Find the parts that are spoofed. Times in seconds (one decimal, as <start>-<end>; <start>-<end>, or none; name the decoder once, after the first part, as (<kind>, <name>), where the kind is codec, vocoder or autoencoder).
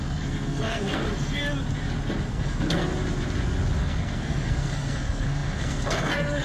0.0-1.4 (codec, SNAC); 2.3-2.9; 3.8-6.4